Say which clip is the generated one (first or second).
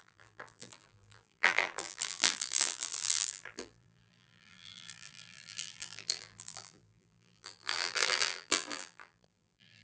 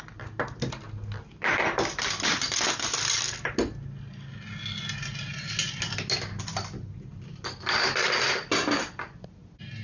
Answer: first